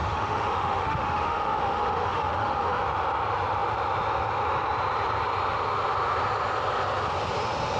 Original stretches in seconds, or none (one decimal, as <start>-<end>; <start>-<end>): 2.8-7.8